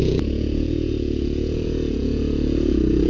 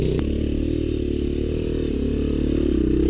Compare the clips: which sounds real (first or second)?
second